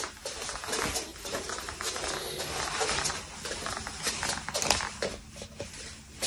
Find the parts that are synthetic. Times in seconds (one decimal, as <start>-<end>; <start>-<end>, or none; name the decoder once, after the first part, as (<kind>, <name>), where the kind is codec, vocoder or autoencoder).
1.1-4.9 (vocoder, BigVGAN v2)